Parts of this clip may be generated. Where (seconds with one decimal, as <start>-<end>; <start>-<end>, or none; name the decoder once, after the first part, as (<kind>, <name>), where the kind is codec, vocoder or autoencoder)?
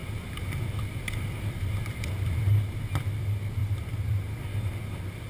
0.0-2.5 (vocoder, BigVGAN v2); 3.6-4.7